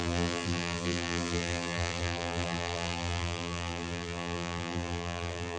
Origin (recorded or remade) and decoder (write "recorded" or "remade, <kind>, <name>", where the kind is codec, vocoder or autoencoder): remade, vocoder, BigVGAN v2